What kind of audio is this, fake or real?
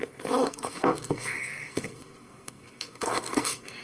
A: fake